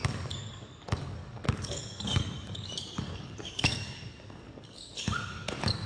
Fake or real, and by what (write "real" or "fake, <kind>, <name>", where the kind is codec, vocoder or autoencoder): fake, codec, DAC